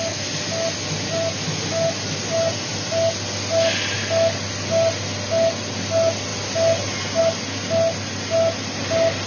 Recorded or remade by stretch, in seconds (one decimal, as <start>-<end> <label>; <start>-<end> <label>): 0.0-9.3 recorded